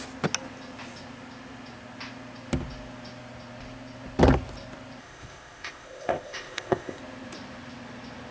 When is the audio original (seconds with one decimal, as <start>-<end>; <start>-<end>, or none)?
0.0-5.0; 7.0-8.3